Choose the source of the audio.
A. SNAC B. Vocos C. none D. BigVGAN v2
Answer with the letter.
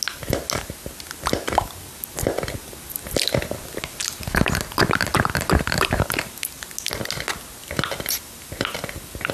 C